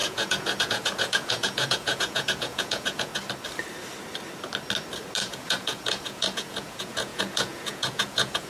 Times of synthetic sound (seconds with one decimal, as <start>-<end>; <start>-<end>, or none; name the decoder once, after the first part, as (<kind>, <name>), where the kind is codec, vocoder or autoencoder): 0.0-3.1 (vocoder, Vocos); 5.2-8.5